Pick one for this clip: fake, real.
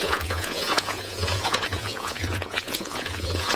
fake